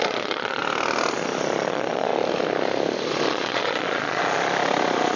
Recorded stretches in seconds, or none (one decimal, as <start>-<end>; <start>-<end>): 0.6-1.7; 2.1-3.3; 4.2-5.2